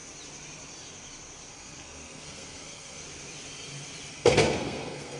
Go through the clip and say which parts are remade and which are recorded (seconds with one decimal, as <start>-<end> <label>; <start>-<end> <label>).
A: 0.0-1.5 recorded; 1.5-3.0 remade; 3.0-4.1 recorded; 4.1-5.2 remade